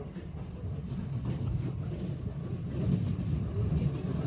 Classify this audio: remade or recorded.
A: recorded